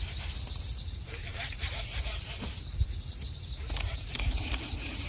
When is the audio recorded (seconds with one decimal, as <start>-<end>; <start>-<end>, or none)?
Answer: none